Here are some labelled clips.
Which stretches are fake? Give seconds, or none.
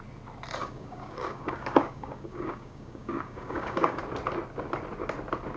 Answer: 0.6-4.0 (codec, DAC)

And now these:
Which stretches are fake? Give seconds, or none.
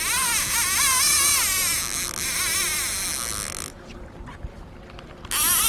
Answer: none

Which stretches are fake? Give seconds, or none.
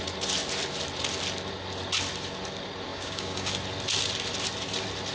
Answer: 2.9-3.5 (codec, DAC)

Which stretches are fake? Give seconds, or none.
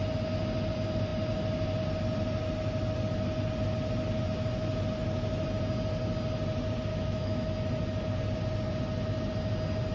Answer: 6.9-7.5 (autoencoder, DAC-VAE)